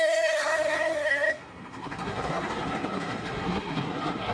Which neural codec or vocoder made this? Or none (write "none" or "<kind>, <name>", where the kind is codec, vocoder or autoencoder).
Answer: codec, SNAC